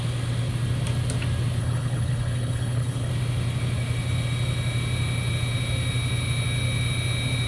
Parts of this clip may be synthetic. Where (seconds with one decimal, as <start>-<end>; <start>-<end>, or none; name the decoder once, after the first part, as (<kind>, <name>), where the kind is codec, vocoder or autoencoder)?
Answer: 1.6-3.1 (codec, HILCodec)